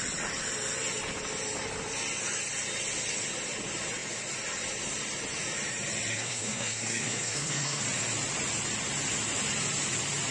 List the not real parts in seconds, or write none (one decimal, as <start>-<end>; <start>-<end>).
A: 6.1-7.8